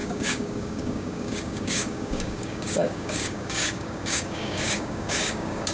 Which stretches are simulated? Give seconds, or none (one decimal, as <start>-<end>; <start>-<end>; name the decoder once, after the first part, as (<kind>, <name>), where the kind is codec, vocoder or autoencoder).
0.0-5.7 (codec, DAC)